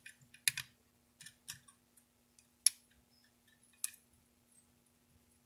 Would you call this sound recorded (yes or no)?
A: yes